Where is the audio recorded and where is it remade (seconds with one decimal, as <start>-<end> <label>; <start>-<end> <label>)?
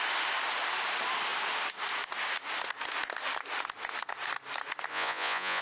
0.0-4.9 recorded; 4.9-5.6 remade